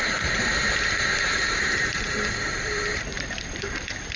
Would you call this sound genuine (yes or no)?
no